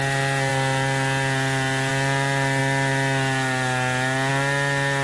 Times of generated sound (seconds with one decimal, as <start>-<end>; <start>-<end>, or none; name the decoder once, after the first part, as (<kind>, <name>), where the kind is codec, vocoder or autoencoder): none